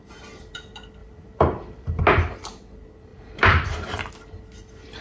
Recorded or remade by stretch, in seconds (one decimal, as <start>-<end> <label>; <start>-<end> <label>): 0.0-1.0 recorded; 1.0-2.0 remade; 2.0-3.1 recorded; 3.1-4.1 remade; 4.1-5.0 recorded